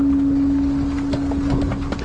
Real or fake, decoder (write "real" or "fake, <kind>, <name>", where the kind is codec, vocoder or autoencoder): real